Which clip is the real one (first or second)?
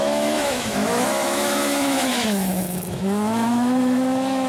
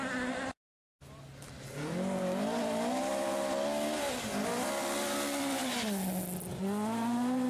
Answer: second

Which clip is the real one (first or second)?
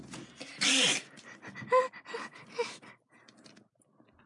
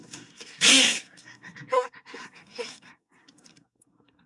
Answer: first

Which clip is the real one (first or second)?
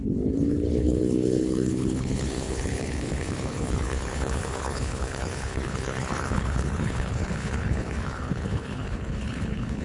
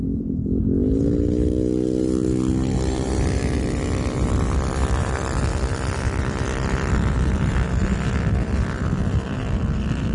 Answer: second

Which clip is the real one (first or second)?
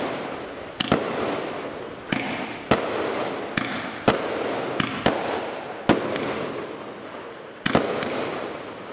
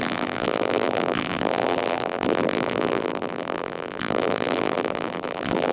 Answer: first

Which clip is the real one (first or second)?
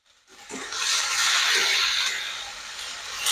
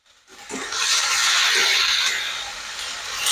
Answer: second